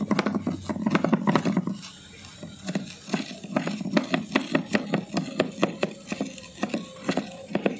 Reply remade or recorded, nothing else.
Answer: recorded